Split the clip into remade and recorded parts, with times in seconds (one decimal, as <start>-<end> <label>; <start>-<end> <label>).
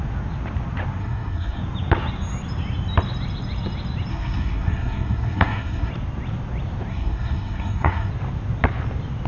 0.0-1.0 recorded; 1.0-1.6 remade; 1.6-4.1 recorded; 4.1-5.9 remade; 5.9-6.9 recorded; 6.9-8.1 remade; 8.1-9.3 recorded